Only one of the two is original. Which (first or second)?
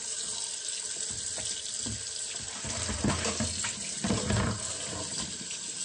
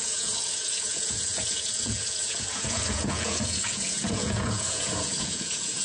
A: first